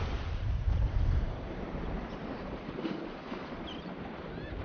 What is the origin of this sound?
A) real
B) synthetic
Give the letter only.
B